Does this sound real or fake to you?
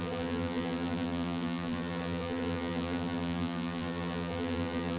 fake